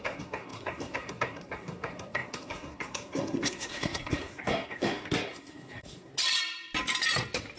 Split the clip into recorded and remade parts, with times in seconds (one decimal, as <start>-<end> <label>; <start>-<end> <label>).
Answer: 0.0-6.1 remade; 6.1-7.6 recorded